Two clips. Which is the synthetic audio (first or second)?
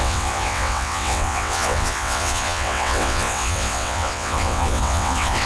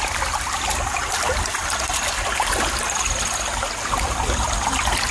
first